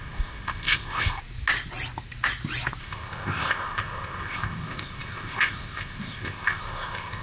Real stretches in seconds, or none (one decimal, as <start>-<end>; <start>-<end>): 1.2-2.8